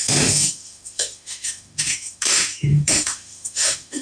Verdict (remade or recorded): remade